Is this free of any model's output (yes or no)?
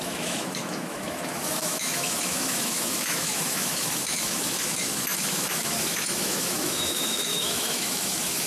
no